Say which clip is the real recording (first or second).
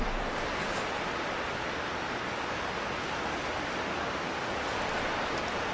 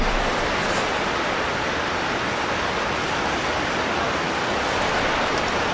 first